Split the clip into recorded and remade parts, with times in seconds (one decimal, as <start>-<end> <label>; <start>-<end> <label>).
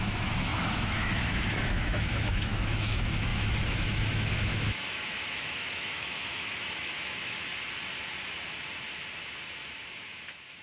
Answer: 0.0-7.5 remade; 7.5-9.9 recorded; 9.9-10.6 remade